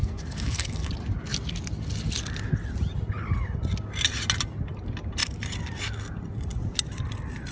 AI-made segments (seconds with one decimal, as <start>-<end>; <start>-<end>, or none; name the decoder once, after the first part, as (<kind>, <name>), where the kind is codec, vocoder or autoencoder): 0.0-0.9 (codec, SNAC)